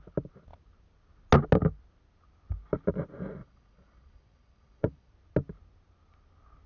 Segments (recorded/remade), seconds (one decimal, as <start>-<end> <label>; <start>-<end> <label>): 0.0-3.4 recorded; 3.4-5.1 remade; 5.1-6.7 recorded